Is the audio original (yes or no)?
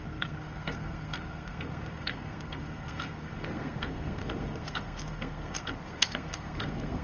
no